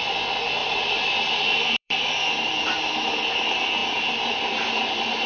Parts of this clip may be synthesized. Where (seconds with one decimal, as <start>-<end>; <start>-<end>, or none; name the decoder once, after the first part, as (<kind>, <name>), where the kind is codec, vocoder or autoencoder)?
0.6-3.4 (vocoder, BigVGAN v2); 3.8-5.3